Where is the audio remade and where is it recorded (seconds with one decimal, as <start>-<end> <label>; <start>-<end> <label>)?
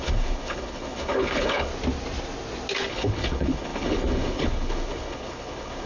0.0-1.7 remade; 1.7-2.9 recorded; 2.9-5.9 remade